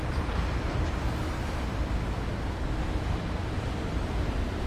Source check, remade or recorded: recorded